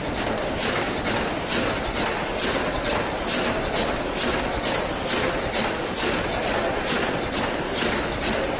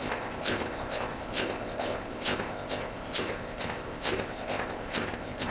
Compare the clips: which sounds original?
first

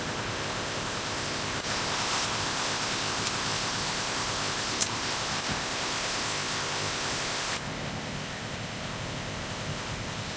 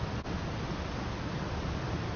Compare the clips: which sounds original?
second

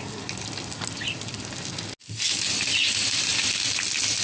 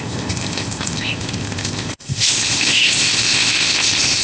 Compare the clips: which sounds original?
first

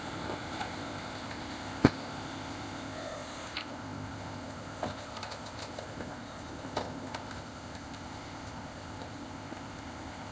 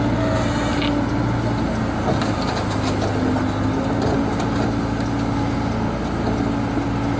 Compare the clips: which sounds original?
second